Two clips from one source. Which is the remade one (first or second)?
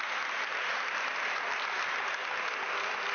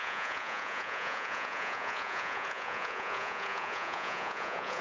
second